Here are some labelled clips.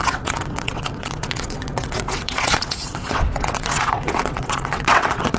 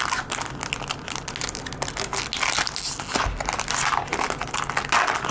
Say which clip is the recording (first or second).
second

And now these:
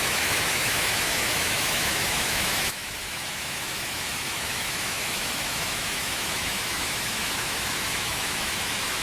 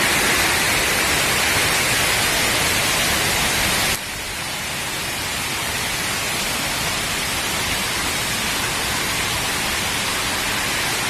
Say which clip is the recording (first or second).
second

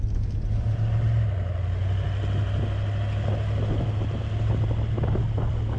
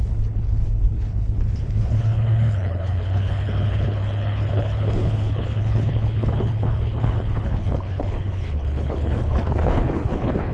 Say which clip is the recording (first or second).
first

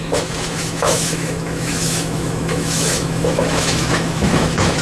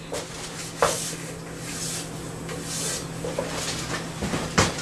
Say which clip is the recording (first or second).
second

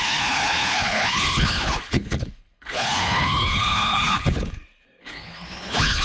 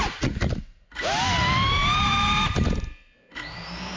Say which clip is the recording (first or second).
second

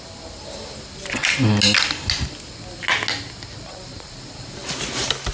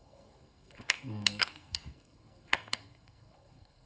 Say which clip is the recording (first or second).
first